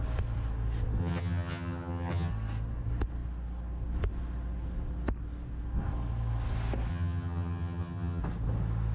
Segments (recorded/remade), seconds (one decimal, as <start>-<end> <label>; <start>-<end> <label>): 0.0-1.0 recorded; 1.0-2.3 remade; 2.3-6.9 recorded; 6.9-8.2 remade; 8.2-8.9 recorded